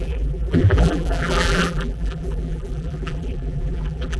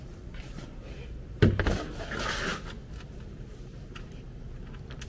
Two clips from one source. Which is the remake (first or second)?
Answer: first